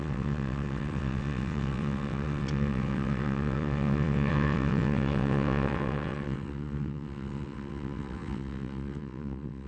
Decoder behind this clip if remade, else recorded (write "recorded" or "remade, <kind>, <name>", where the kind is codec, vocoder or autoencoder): remade, vocoder, WaveNeXt